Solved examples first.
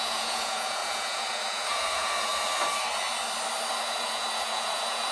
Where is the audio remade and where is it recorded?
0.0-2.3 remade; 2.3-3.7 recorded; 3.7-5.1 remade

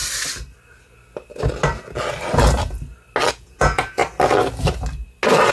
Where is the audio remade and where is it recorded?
0.0-3.3 recorded; 3.3-4.0 remade; 4.0-5.5 recorded

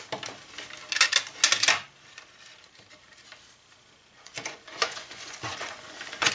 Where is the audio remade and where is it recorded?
0.0-4.0 recorded; 4.0-6.3 remade